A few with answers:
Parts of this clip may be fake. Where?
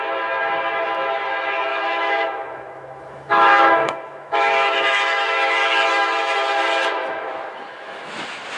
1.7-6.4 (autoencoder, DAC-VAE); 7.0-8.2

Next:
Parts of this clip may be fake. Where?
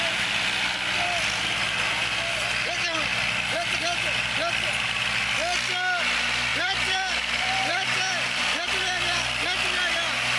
3.1-3.8 (vocoder, BigVGAN v2); 6.5-8.4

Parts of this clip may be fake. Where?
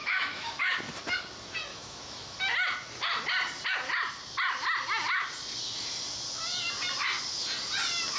0.0-0.8 (autoencoder, DAC-VAE); 1.7-2.4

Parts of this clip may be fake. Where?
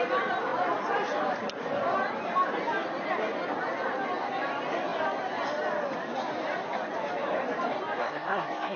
8.0-8.8 (codec, SNAC)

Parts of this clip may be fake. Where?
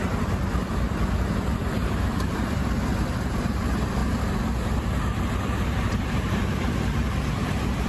0.0-2.6 (vocoder, BigVGAN v2); 3.1-4.0; 5.4-7.9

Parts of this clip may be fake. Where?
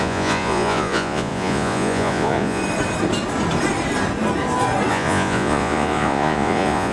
0.0-2.6 (vocoder, Vocos); 4.9-6.9